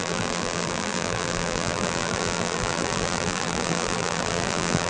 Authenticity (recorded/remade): remade